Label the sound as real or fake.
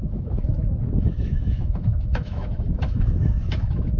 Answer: fake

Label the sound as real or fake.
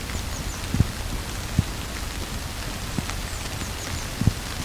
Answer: real